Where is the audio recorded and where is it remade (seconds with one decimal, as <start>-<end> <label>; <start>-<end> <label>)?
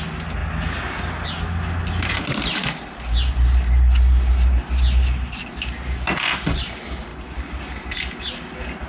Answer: 0.0-7.1 recorded; 7.1-8.9 remade